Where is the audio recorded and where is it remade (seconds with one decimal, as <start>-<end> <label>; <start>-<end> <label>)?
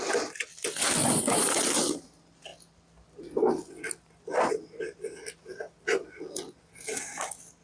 0.0-1.0 recorded; 1.0-1.7 remade; 1.7-7.6 recorded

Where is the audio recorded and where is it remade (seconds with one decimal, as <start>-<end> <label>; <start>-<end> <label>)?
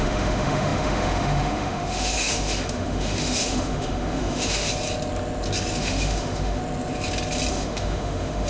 0.0-4.7 remade; 4.7-5.8 recorded; 5.8-6.6 remade; 6.6-7.5 recorded; 7.5-8.5 remade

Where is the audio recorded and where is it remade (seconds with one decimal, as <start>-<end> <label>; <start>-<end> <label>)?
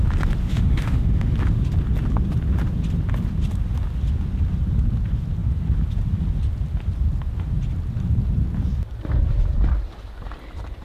0.0-0.4 recorded; 0.4-1.3 remade; 1.3-10.8 recorded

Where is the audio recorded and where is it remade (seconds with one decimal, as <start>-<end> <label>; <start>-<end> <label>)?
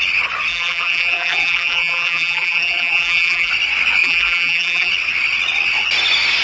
0.0-0.5 recorded; 0.5-3.5 remade; 3.5-4.0 recorded; 4.0-4.9 remade; 4.9-6.4 recorded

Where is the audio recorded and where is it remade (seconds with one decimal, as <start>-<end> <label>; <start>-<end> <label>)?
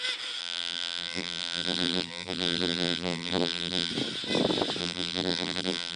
0.0-0.4 recorded; 0.4-3.9 remade; 3.9-4.8 recorded; 4.8-6.0 remade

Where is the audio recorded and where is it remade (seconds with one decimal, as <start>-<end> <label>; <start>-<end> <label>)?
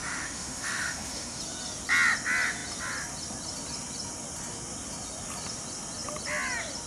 0.0-1.4 remade; 1.4-6.9 recorded